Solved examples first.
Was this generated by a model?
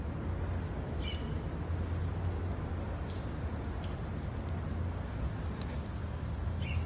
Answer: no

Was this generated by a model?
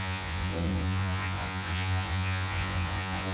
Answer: yes